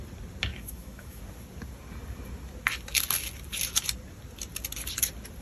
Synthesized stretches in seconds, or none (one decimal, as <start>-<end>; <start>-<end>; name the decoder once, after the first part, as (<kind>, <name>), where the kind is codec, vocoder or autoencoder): 0.5-1.2 (autoencoder, DAC-VAE)